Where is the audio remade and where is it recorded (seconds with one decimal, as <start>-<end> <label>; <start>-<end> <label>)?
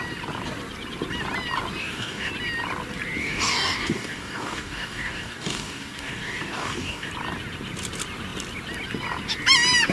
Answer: 0.0-1.8 recorded; 1.8-2.3 remade; 2.3-3.2 recorded; 3.2-7.1 remade; 7.1-9.9 recorded